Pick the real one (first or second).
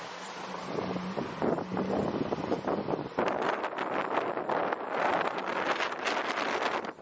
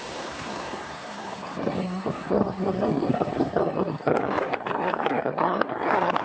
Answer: first